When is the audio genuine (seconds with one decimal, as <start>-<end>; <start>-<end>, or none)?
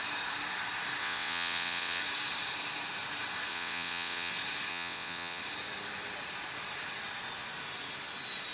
0.0-1.0; 2.0-3.5; 4.3-4.7; 5.4-8.5